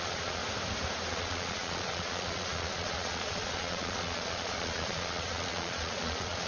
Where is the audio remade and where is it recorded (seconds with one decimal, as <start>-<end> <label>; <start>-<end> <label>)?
0.0-0.4 remade; 0.4-1.1 recorded; 1.1-6.5 remade